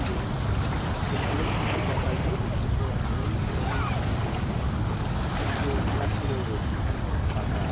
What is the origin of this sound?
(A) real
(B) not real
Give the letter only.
A